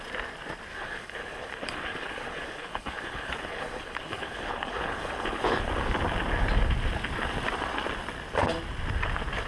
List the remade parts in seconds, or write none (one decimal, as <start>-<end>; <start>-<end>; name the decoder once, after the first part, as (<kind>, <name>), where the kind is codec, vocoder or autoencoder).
0.7-5.7 (codec, HILCodec)